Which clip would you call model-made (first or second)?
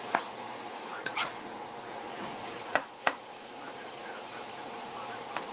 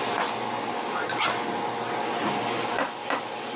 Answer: first